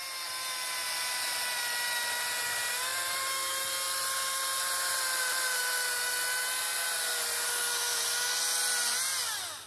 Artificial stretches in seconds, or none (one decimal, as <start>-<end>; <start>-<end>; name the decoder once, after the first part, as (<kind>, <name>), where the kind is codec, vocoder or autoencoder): 2.9-8.0 (vocoder, BigVGAN v2)